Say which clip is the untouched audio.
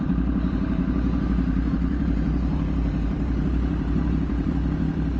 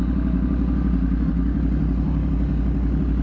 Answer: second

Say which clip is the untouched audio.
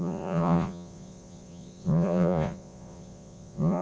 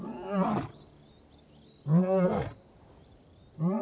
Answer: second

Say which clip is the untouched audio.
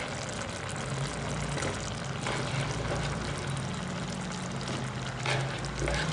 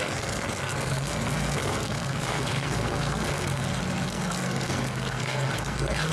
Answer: first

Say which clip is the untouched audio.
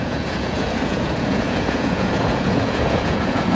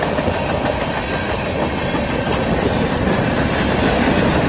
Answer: second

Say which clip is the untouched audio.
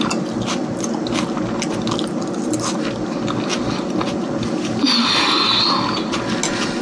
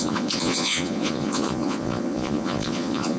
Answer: first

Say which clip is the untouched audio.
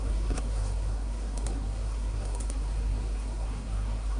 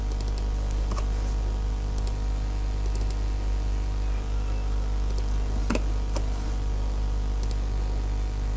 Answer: second